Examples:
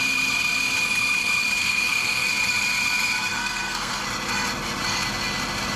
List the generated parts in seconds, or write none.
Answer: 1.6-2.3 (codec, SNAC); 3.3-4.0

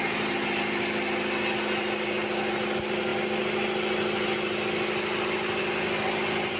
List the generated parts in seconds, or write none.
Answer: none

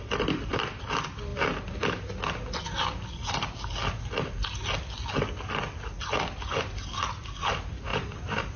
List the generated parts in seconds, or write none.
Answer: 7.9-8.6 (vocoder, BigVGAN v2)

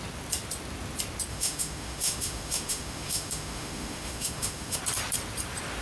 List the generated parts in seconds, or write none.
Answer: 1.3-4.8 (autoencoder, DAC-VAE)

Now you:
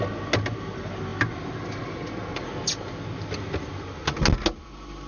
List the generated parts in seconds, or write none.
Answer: none

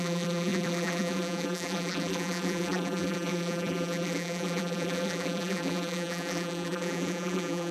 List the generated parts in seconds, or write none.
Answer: 0.0-7.7 (vocoder, BigVGAN v2)